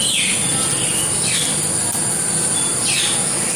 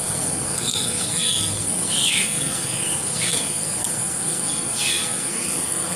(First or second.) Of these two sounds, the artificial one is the second